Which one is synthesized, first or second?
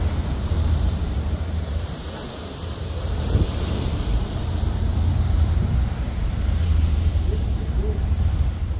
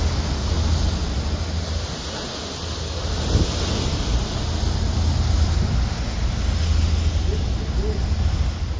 first